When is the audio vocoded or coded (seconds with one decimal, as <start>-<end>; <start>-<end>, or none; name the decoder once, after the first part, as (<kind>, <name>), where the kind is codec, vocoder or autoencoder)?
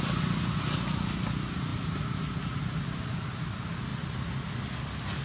none